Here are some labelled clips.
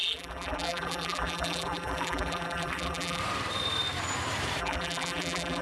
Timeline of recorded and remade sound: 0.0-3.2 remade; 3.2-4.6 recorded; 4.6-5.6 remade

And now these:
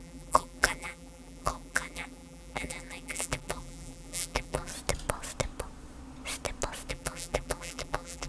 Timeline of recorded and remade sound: 0.0-4.7 remade; 4.7-6.9 recorded; 6.9-8.3 remade

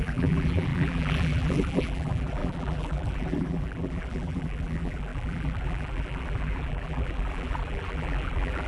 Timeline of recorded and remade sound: 0.0-8.7 remade

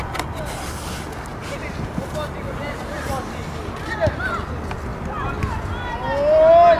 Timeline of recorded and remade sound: 0.0-6.8 recorded

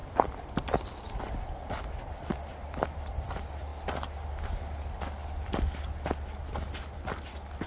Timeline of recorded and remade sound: 0.0-1.4 recorded; 1.4-3.7 remade; 3.7-6.5 recorded; 6.5-7.7 remade

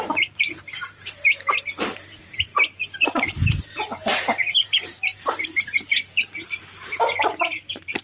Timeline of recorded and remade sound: 0.0-1.3 remade; 1.3-1.8 recorded; 1.8-8.0 remade